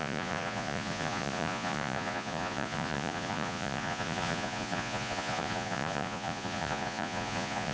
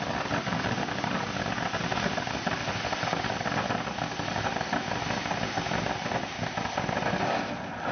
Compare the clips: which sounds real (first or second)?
second